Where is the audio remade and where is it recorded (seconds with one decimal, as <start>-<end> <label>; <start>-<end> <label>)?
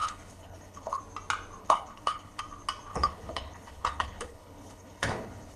0.0-1.0 remade; 1.0-1.6 recorded; 1.6-2.4 remade; 2.4-2.9 recorded; 2.9-5.6 remade